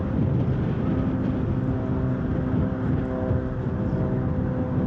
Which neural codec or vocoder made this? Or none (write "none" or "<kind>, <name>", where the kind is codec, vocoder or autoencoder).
none